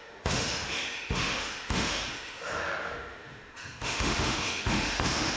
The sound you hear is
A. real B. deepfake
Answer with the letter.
B